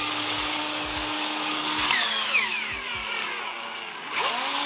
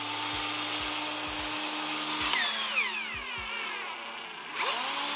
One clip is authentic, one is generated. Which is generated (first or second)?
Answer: first